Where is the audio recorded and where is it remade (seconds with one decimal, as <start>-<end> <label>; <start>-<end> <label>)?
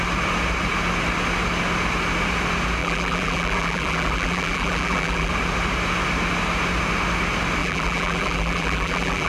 0.0-2.8 recorded; 2.8-5.3 remade; 5.3-7.6 recorded; 7.6-9.3 remade